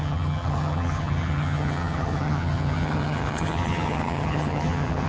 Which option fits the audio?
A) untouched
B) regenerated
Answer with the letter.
B